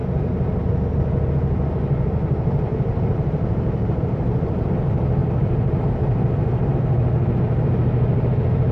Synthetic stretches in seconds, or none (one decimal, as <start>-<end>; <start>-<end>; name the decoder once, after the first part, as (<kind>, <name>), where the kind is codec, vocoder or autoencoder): 2.7-4.7 (vocoder, BigVGAN v2); 5.2-5.8